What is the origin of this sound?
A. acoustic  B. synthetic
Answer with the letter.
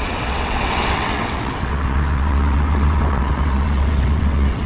B